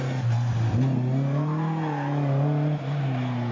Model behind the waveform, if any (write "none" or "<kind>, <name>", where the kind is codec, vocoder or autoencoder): none